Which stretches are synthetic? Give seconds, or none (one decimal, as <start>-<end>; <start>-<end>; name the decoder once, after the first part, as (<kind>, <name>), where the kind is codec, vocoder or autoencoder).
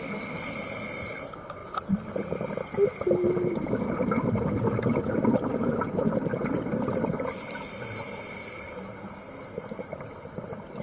1.6-2.5 (vocoder, BigVGAN v2)